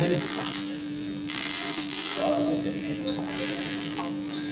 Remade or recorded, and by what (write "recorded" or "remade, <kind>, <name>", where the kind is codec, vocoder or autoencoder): remade, vocoder, BigVGAN v2